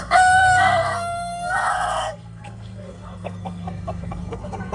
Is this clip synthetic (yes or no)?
yes